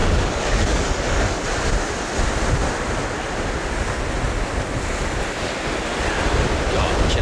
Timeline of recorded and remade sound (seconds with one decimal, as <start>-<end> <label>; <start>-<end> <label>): 0.0-1.4 remade; 1.4-7.2 recorded